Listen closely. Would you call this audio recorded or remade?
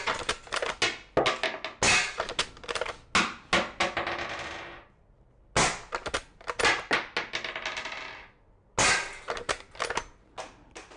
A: recorded